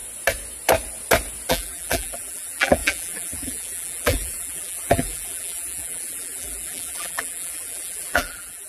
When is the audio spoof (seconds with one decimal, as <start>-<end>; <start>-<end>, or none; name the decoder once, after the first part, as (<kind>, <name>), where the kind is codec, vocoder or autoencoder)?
1.5-8.7 (vocoder, BigVGAN v2)